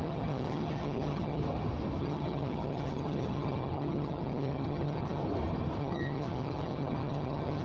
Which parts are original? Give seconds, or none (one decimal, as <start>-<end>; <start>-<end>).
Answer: 1.4-2.0; 5.2-5.8

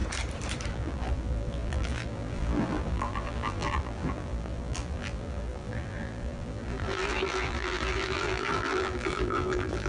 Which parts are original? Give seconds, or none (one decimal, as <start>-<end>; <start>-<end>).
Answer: 0.0-0.7

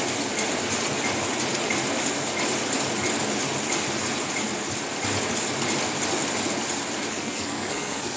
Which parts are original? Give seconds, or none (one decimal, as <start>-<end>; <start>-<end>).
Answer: 0.0-7.1

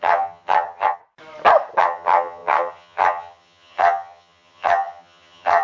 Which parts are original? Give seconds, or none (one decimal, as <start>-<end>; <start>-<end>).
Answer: 1.0-1.8